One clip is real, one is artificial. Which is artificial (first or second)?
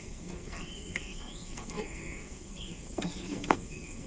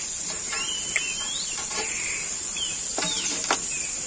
first